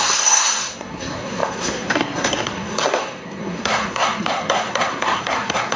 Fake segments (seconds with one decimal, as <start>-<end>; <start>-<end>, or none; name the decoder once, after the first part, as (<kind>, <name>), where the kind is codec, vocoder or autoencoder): 0.0-5.8 (codec, SNAC)